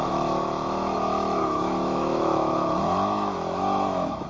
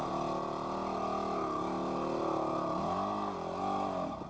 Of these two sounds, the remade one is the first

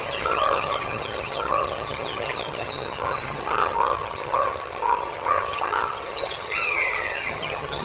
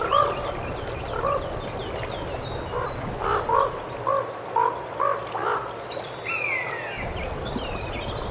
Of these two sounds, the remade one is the first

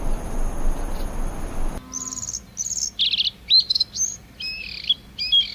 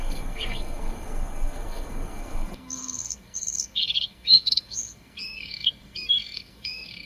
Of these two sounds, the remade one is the second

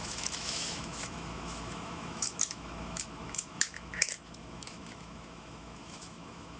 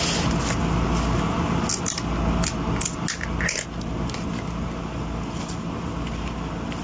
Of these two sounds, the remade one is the first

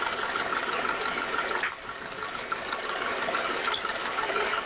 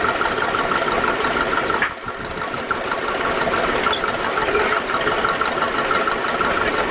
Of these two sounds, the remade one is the first